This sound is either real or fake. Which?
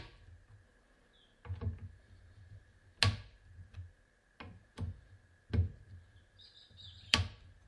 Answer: real